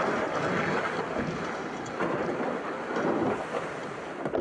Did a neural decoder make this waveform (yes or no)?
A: no